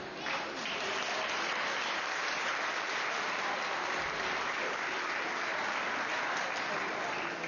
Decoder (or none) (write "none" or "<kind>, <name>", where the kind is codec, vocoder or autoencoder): none